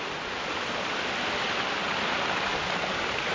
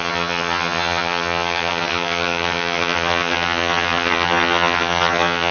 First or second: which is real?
first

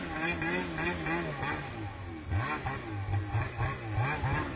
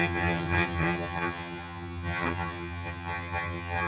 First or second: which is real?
first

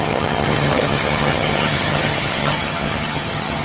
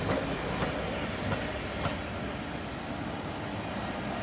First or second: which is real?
second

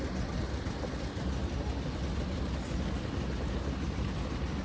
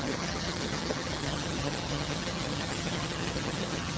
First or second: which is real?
first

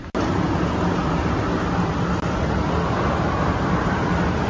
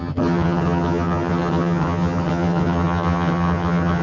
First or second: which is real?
first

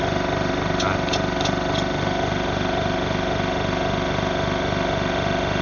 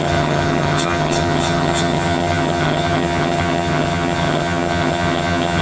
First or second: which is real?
first